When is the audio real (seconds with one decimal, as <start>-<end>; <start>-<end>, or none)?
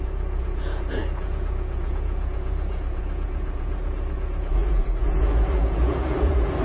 none